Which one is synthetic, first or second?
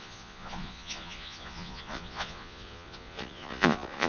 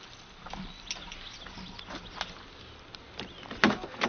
first